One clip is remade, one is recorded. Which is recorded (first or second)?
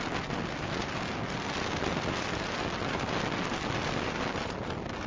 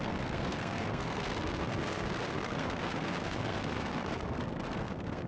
first